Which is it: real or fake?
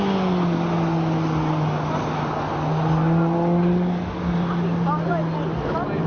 real